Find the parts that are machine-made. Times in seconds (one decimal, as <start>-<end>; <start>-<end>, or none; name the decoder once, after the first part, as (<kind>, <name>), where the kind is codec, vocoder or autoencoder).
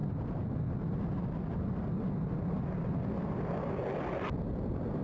none